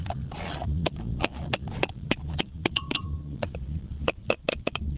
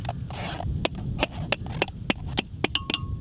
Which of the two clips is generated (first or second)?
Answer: first